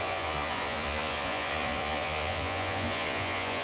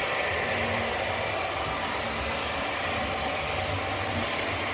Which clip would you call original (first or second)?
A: second